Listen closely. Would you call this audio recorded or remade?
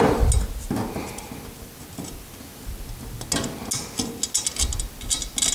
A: recorded